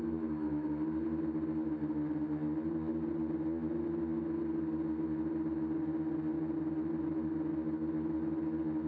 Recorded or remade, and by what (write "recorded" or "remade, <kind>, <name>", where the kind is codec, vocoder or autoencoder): recorded